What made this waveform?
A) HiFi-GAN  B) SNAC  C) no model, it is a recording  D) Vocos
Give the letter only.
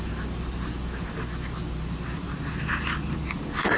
C